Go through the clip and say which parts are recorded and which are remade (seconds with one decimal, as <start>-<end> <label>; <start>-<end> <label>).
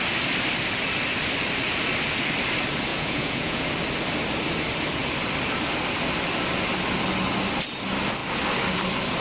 0.0-2.9 recorded; 2.9-3.7 remade; 3.7-9.2 recorded